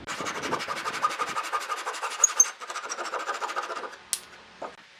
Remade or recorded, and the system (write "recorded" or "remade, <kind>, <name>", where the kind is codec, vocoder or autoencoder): recorded